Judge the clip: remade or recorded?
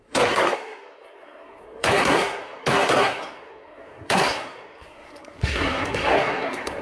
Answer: remade